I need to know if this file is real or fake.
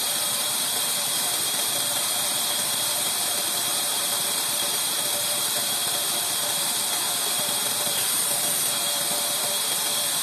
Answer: fake